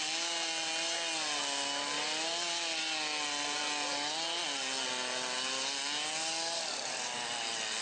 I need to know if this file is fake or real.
real